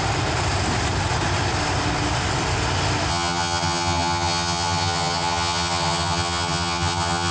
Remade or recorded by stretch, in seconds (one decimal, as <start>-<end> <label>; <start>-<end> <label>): 0.0-3.1 recorded; 3.1-7.3 remade